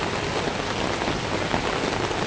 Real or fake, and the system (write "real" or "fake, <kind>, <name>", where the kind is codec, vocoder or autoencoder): real